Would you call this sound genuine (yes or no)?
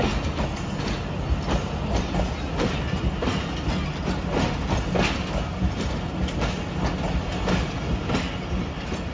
yes